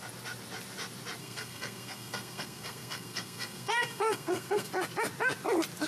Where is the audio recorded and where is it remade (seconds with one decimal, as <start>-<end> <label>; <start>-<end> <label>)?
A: 0.0-1.2 recorded; 1.2-4.7 remade; 4.7-5.9 recorded